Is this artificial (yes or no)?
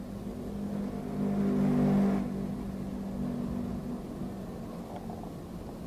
no